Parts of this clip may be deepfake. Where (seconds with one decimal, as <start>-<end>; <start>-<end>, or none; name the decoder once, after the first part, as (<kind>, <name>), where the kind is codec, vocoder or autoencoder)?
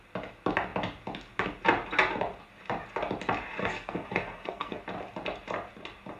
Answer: 3.6-4.8 (codec, SNAC)